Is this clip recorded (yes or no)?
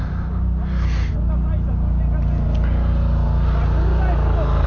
yes